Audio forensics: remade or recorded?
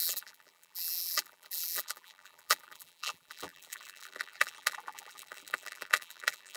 remade